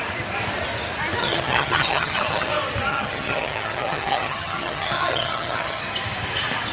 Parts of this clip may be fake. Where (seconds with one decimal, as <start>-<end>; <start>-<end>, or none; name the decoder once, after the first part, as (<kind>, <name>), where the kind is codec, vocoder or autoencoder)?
1.2-2.5 (vocoder, HiFi-GAN); 2.9-5.8